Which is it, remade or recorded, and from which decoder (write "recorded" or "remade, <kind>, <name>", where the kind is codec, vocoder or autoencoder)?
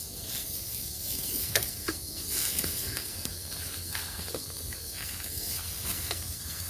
remade, codec, SNAC